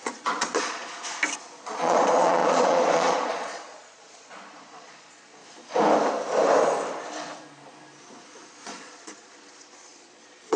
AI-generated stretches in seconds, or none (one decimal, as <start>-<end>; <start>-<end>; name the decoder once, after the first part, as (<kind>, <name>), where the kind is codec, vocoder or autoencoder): 0.0-0.8 (vocoder, Vocos); 1.6-5.4; 8.5-10.6